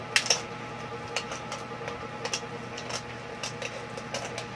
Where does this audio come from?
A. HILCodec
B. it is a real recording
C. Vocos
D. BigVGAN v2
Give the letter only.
B